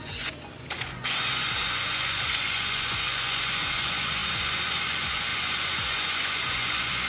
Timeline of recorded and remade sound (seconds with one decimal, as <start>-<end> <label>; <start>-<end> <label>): 0.0-7.1 remade